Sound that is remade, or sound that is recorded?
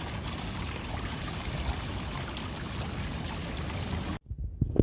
recorded